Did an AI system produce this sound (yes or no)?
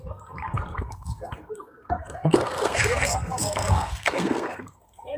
yes